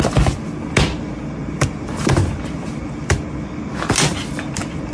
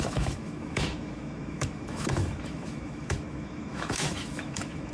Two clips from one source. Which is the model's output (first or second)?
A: second